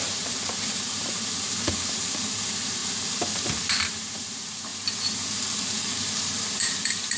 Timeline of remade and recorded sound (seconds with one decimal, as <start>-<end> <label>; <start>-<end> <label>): 0.0-4.7 remade; 4.7-5.9 recorded; 5.9-7.2 remade